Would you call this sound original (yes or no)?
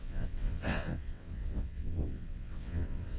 no